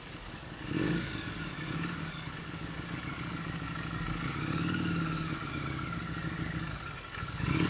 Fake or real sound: fake